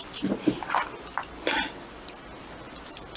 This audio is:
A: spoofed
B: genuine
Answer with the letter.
B